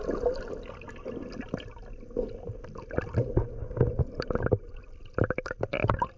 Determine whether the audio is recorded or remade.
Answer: recorded